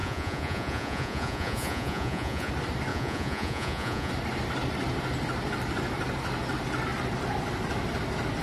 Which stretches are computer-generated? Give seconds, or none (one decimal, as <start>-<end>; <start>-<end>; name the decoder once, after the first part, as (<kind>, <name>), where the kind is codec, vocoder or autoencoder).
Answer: 0.0-2.5 (vocoder, Vocos); 2.9-4.1